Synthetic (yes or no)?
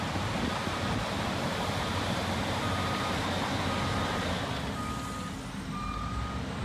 no